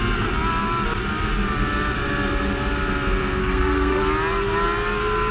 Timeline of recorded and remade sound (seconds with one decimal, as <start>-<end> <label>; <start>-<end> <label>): 0.0-3.4 recorded; 3.4-4.0 remade; 4.0-5.3 recorded